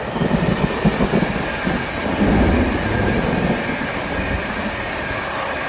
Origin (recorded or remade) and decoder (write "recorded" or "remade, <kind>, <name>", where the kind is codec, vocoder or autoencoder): recorded